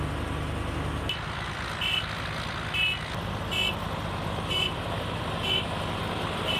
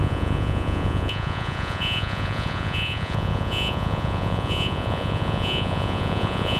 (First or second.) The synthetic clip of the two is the second